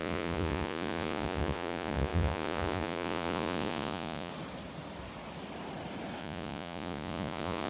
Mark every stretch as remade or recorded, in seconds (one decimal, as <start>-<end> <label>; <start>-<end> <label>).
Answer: 0.0-4.3 remade; 4.3-6.2 recorded; 6.2-7.7 remade